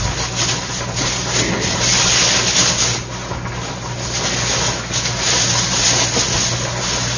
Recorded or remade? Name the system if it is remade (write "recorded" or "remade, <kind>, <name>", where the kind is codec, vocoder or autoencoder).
recorded